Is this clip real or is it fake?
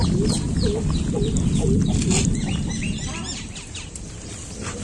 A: fake